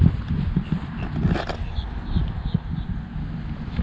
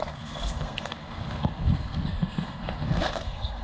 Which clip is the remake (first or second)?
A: second